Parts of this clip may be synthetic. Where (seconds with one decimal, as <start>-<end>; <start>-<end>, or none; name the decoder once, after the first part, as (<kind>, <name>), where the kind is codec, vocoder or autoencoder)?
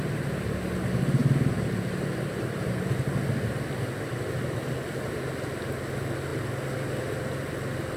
none